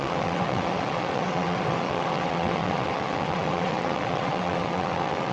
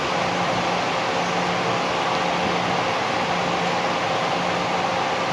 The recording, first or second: second